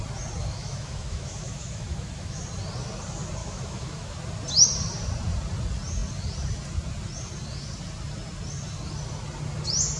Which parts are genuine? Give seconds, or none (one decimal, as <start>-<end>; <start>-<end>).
0.0-0.4; 2.4-3.4; 4.2-10.0

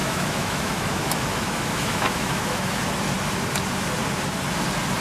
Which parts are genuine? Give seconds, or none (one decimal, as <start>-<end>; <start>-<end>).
2.8-5.0

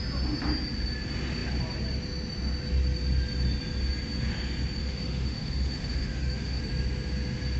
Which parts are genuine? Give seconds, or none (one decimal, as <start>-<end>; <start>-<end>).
0.0-4.8; 6.6-7.6

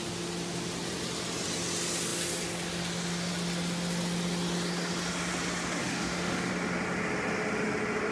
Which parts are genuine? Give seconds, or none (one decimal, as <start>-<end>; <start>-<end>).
0.0-5.8; 6.5-8.1

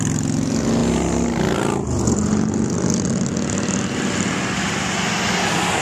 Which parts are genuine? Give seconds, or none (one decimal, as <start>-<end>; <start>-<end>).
0.0-5.8